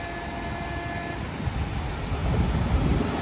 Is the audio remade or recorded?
recorded